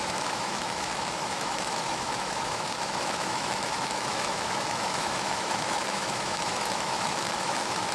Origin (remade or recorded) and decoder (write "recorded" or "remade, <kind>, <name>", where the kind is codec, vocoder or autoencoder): remade, autoencoder, DAC-VAE